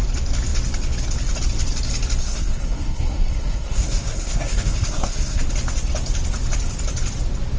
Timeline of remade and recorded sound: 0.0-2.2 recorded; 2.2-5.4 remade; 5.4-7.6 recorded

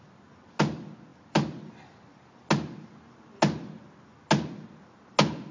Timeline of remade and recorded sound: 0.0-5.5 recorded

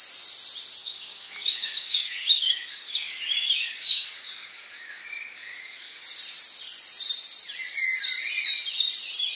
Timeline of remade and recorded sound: 0.0-0.8 recorded; 0.8-6.0 remade; 6.0-9.3 recorded